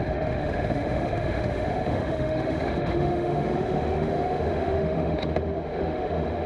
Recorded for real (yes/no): no